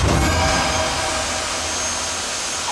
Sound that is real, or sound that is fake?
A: real